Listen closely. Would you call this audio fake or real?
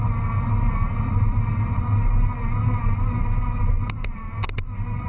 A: real